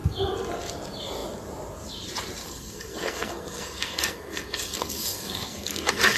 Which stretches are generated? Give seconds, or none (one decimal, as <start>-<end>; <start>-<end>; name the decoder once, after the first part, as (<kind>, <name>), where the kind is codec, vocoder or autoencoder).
2.4-6.2 (codec, SNAC)